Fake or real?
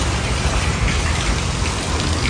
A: real